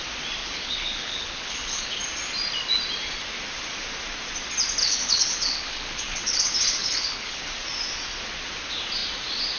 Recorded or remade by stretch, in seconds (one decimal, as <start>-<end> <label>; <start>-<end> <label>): 0.0-0.4 recorded; 0.4-2.0 remade; 2.0-4.8 recorded; 4.8-7.5 remade; 7.5-9.6 recorded